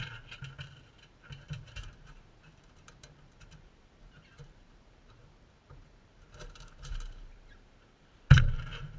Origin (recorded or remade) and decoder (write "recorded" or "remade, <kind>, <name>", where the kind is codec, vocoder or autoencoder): remade, vocoder, BigVGAN v2